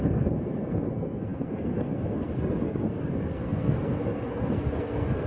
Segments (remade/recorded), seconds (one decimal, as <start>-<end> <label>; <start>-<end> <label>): 0.0-5.3 remade

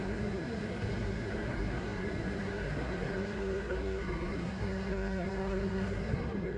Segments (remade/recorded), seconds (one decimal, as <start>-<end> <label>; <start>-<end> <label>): 0.0-6.6 remade

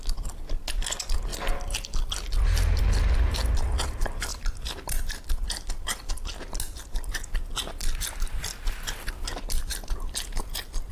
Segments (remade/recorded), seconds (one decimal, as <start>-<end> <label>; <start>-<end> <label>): 0.0-10.9 recorded